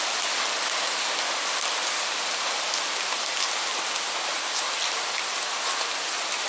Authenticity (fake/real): real